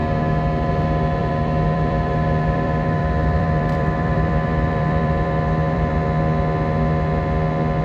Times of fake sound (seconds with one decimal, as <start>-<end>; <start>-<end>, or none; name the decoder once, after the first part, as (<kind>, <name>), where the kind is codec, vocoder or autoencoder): 1.2-5.9 (vocoder, BigVGAN v2)